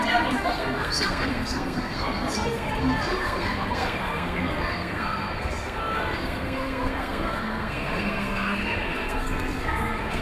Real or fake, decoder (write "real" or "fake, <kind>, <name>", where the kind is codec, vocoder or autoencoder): fake, codec, SNAC